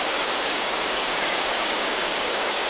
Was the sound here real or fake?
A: fake